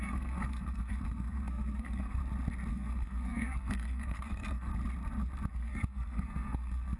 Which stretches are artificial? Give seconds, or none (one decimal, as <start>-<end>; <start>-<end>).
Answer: 0.0-2.2; 2.7-4.7; 5.5-7.0